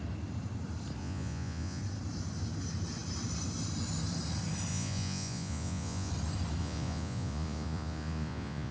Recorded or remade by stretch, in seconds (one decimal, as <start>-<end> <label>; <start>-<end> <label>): 0.0-1.0 recorded; 1.0-1.8 remade; 1.8-4.7 recorded; 4.7-6.1 remade; 6.1-6.6 recorded; 6.6-8.7 remade